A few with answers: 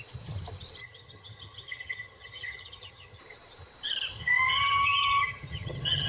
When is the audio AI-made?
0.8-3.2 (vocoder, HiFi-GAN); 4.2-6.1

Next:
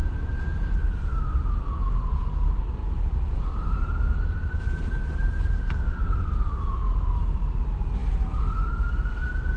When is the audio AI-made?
0.0-1.1 (vocoder, BigVGAN v2); 2.8-6.8

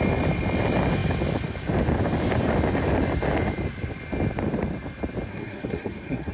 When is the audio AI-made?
5.3-6.3 (codec, SNAC)

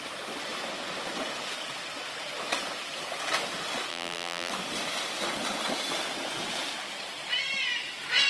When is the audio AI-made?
3.9-4.5 (vocoder, BigVGAN v2)

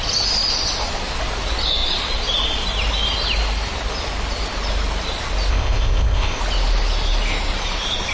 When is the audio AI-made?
5.5-6.4 (codec, ZipCodec)

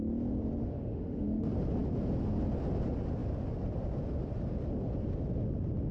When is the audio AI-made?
0.6-1.4 (autoencoder, DAC-VAE)